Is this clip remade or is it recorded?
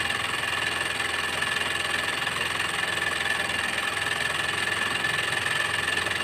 recorded